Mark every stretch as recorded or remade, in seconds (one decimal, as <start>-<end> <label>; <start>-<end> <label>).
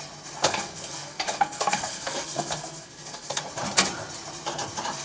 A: 0.0-0.4 recorded; 0.4-3.4 remade; 3.4-5.0 recorded